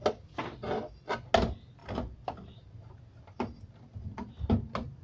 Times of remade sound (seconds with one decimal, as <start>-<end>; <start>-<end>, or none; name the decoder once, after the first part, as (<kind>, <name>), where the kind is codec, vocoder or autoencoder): none